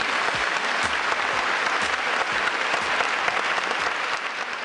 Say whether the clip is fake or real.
real